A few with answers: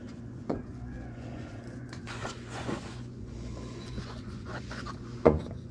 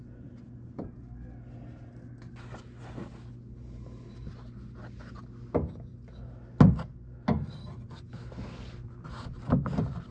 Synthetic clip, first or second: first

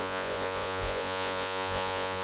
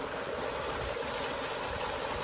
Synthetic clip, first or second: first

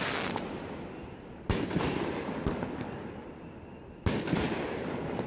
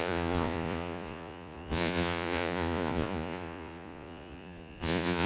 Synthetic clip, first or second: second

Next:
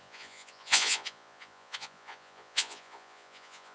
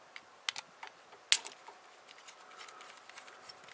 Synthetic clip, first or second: first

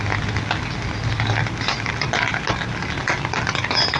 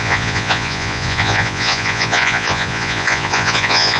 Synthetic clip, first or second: second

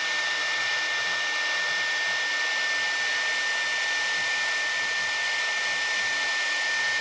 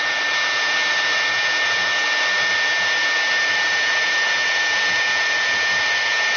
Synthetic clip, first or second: second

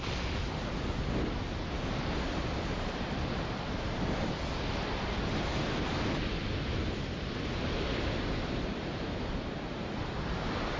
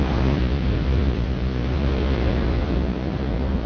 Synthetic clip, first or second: second